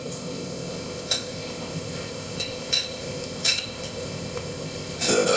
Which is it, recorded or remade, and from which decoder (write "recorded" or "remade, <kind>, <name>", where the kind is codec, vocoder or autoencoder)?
remade, codec, ZipCodec